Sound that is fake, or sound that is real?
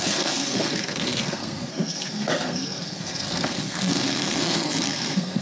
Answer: fake